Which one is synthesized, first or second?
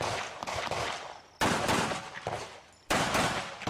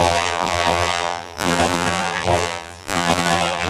second